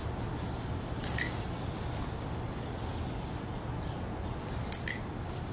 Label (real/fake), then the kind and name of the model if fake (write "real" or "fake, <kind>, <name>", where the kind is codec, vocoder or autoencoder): real